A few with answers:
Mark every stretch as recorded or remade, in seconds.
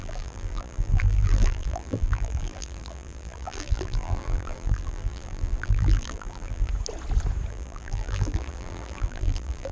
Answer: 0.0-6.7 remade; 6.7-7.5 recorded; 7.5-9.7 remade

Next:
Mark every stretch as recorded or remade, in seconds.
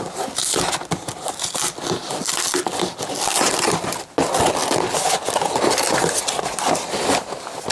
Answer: 0.0-7.7 recorded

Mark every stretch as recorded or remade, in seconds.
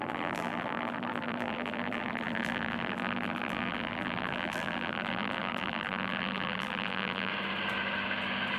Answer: 0.0-7.3 remade; 7.3-8.6 recorded